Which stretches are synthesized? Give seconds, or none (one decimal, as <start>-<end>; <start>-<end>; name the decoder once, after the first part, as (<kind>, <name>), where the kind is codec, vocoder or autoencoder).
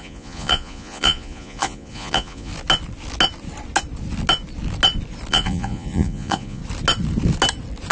0.0-2.5 (vocoder, Vocos); 5.3-6.6